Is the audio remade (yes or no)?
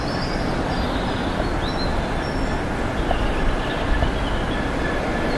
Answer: no